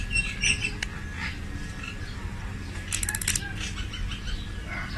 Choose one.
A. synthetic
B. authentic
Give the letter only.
B